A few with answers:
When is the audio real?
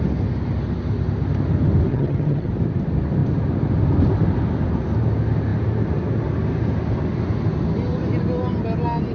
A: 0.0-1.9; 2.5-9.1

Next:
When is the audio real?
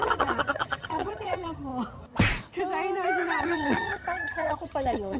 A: 1.7-3.4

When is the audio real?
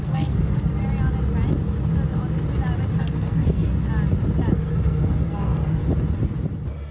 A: 0.8-3.0; 3.7-4.5; 5.8-6.9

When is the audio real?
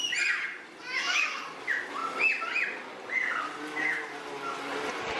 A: 0.0-0.9; 1.4-5.2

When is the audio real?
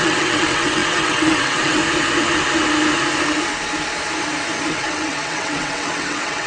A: 1.8-4.7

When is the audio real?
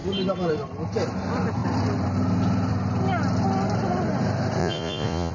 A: 0.0-4.6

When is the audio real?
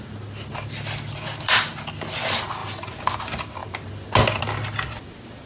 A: 0.0-5.5